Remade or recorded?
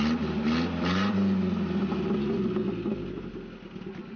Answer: recorded